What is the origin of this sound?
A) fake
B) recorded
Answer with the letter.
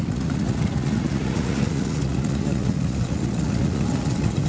A